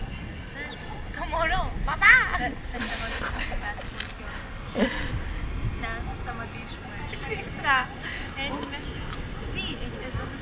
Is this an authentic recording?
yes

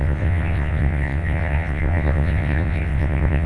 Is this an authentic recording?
no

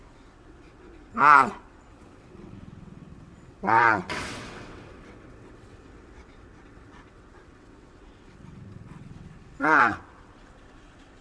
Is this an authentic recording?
no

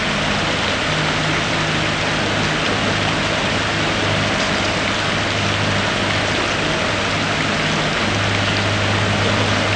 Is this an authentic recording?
yes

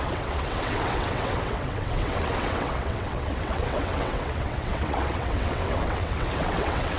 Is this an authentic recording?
no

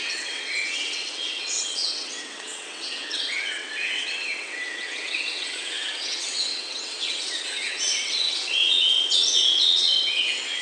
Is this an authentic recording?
no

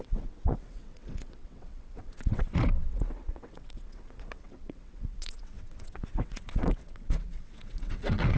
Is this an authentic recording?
no